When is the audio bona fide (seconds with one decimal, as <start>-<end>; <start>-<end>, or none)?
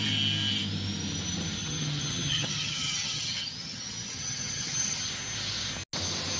0.0-1.6; 5.1-6.4